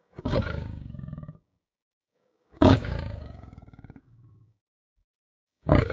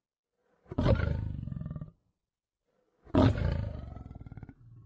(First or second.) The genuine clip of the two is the second